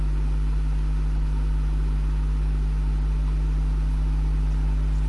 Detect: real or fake real